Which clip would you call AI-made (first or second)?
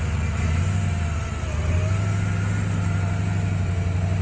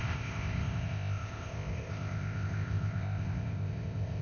second